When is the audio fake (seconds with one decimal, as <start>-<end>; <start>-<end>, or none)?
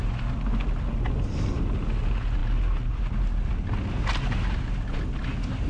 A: none